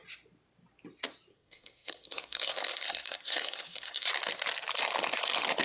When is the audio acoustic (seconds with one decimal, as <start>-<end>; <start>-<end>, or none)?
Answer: 0.0-1.3; 4.1-5.6